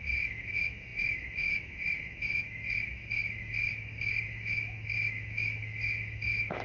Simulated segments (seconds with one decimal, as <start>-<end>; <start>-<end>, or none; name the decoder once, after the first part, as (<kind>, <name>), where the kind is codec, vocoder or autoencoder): 0.0-6.6 (autoencoder, DAC-VAE)